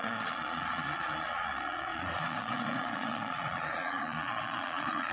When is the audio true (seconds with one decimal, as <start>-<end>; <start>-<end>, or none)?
none